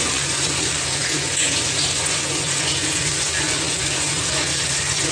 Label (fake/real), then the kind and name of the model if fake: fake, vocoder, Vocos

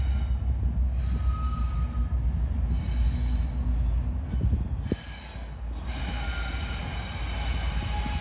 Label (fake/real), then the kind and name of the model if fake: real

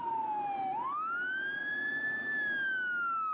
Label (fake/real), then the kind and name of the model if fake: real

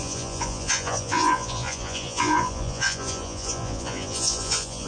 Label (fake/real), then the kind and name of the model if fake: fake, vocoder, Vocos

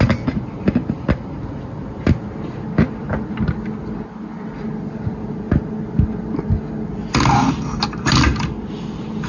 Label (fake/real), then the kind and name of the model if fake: real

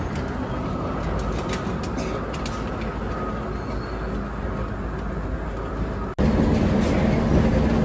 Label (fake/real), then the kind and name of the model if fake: real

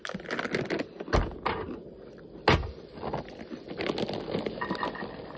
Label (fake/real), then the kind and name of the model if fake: real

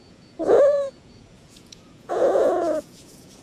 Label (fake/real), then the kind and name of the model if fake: fake, vocoder, Vocos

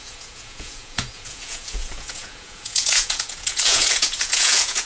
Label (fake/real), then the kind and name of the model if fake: fake, vocoder, Vocos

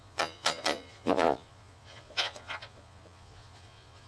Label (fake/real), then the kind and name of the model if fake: fake, vocoder, Vocos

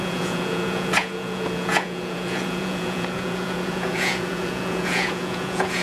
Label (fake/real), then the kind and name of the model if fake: fake, vocoder, Vocos